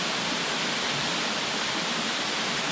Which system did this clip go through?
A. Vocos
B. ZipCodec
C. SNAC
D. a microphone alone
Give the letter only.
D